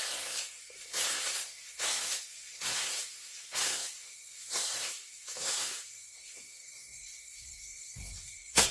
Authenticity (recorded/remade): remade